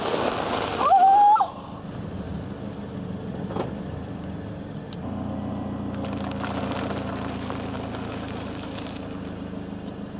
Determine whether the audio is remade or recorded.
recorded